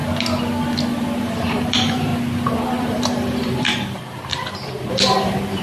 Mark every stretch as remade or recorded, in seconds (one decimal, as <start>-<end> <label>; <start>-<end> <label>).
0.0-1.2 recorded; 1.2-2.1 remade; 2.1-2.8 recorded; 2.8-5.6 remade